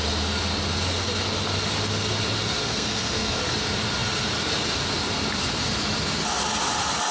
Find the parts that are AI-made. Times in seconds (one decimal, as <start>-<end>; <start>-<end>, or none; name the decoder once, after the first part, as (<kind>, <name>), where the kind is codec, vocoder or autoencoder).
2.6-3.4 (codec, SNAC)